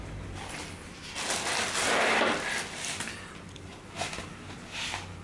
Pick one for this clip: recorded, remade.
recorded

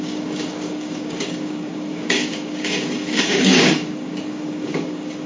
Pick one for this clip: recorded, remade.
remade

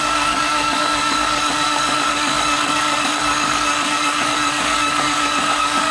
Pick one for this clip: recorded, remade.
remade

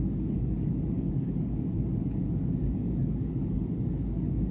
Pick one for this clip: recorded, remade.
remade